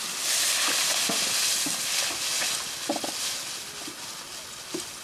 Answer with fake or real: real